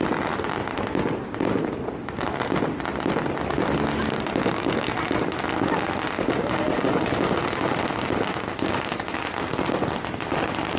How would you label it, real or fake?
real